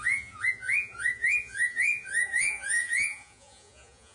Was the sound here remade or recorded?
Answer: remade